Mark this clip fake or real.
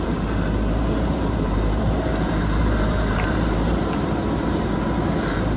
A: fake